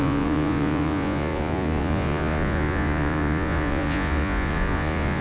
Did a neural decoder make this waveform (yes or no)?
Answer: yes